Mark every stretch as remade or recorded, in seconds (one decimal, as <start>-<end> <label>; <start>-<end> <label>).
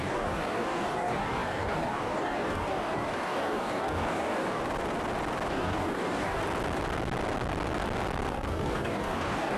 0.0-4.6 remade; 4.6-5.5 recorded; 5.5-6.4 remade; 6.4-8.3 recorded; 8.3-9.6 remade